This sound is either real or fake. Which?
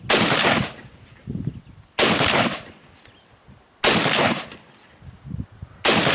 real